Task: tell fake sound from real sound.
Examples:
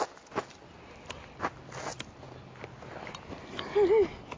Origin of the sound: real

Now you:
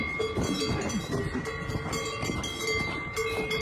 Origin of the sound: real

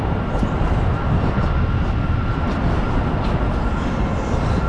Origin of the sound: fake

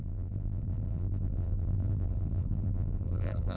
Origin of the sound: fake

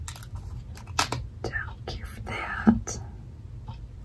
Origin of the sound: real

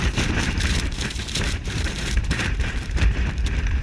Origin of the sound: fake